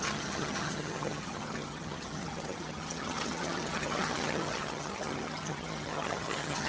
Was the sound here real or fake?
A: fake